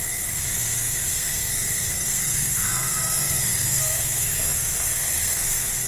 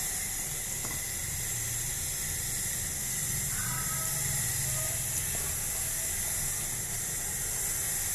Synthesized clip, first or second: first